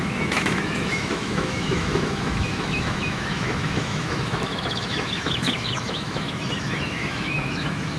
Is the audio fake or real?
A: fake